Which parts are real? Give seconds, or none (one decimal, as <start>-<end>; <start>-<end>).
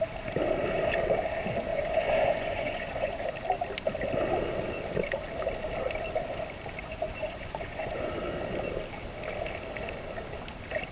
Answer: 0.0-1.7; 3.1-6.8; 8.0-10.9